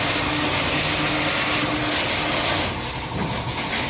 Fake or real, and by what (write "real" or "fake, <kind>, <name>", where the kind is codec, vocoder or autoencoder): real